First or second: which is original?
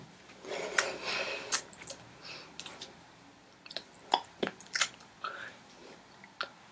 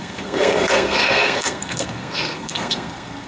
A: first